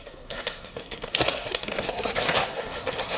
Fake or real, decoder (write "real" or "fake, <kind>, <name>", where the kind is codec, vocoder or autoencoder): fake, codec, SNAC